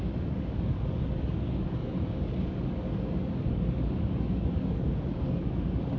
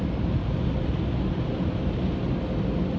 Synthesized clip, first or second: first